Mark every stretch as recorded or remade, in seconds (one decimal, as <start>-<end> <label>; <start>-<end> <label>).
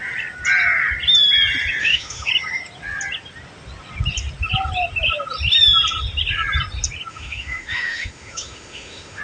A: 0.0-1.8 recorded; 1.8-2.3 remade; 2.3-7.1 recorded; 7.1-9.2 remade